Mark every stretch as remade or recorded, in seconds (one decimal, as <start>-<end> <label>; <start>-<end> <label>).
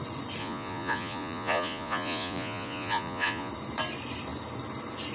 0.0-0.4 recorded; 0.4-3.5 remade; 3.5-5.1 recorded